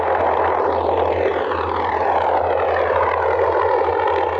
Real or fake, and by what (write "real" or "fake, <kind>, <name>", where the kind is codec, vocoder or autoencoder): real